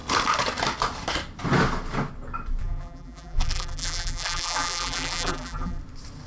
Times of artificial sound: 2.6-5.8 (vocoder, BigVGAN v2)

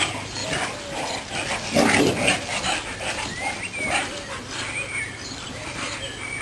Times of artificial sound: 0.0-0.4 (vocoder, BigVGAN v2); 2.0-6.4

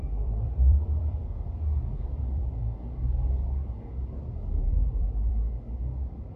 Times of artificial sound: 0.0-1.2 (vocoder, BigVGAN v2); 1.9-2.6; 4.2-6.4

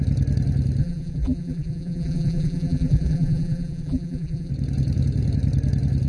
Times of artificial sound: 0.8-4.5 (vocoder, BigVGAN v2)

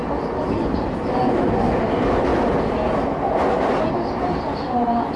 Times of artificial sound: 0.0-2.3 (vocoder, BigVGAN v2); 3.9-5.2

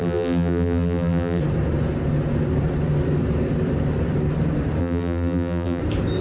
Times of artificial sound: 0.0-1.4 (vocoder, BigVGAN v2); 4.8-5.8